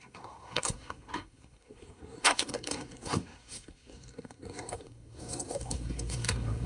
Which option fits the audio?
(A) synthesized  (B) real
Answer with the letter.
A